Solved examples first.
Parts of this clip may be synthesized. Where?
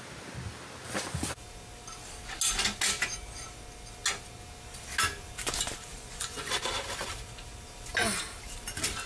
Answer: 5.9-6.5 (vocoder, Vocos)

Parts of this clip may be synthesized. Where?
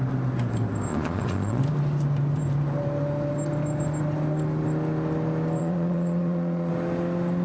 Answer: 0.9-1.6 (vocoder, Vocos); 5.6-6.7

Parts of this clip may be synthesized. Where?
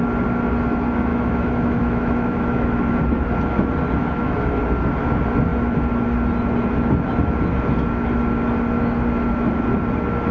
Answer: 1.1-3.0 (autoencoder, DAC-VAE); 4.0-4.6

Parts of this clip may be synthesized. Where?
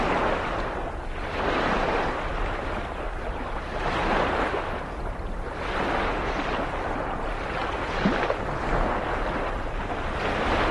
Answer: 2.3-6.5 (vocoder, BigVGAN v2)